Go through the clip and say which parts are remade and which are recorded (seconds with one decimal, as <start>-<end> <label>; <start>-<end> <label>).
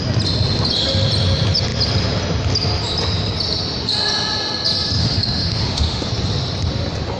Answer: 0.0-5.0 recorded; 5.0-6.1 remade; 6.1-7.2 recorded